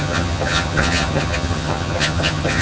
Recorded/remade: remade